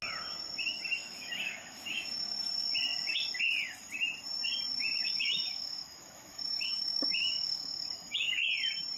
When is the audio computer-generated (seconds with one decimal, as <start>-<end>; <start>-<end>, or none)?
1.0-2.4; 4.7-8.4